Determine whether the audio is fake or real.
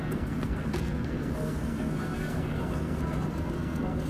fake